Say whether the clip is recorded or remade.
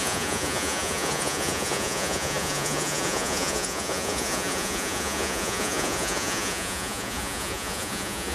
remade